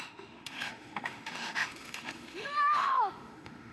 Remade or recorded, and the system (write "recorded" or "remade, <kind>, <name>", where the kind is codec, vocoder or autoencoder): remade, autoencoder, DAC-VAE